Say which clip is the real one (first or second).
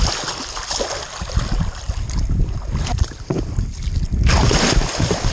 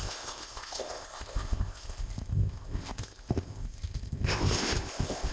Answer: first